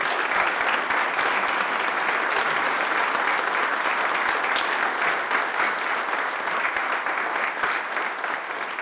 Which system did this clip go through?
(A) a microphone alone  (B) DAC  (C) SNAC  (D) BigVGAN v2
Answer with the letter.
A